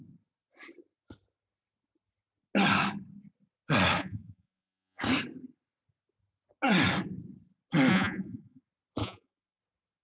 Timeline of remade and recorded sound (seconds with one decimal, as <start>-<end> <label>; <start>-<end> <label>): 0.0-4.0 recorded; 4.0-5.0 remade; 5.0-7.9 recorded; 7.9-8.6 remade; 8.6-9.0 recorded; 9.0-9.6 remade; 9.6-10.0 recorded